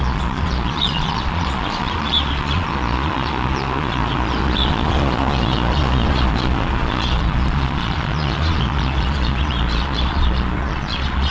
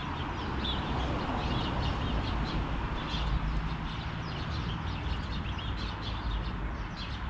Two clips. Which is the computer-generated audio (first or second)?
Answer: first